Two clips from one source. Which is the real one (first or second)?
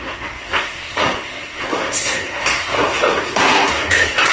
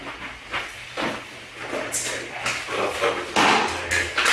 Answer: second